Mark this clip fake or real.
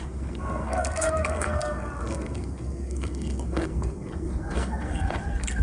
fake